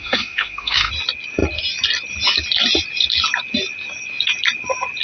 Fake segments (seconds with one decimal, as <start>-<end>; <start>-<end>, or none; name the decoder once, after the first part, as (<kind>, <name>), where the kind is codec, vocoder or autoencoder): 0.0-0.9 (autoencoder, DAC-VAE)